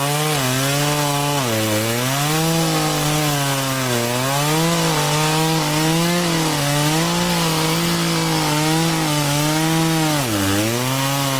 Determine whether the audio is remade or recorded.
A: recorded